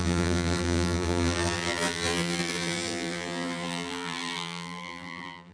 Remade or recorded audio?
remade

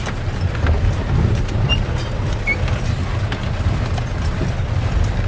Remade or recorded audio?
recorded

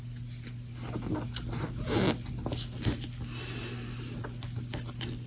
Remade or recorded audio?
recorded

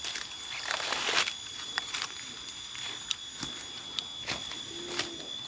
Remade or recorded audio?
recorded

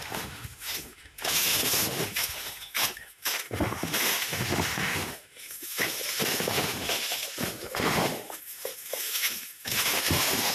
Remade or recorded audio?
remade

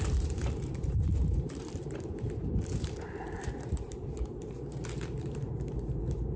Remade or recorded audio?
remade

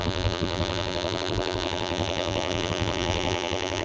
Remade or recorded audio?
remade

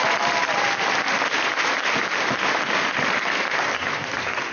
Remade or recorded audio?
recorded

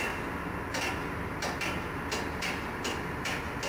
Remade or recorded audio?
recorded